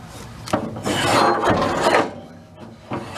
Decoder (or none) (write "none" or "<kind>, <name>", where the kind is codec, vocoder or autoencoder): none